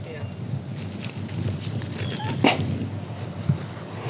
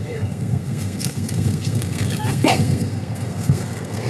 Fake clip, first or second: second